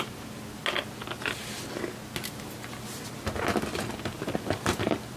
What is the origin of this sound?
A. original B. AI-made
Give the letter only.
A